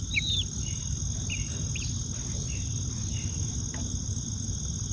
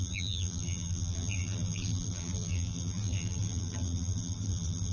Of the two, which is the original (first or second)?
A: first